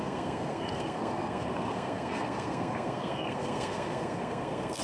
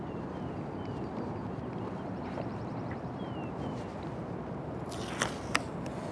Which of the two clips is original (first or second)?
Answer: second